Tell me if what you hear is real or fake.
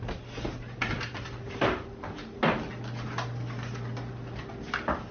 real